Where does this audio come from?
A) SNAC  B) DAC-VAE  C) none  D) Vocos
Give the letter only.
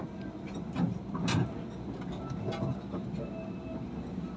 C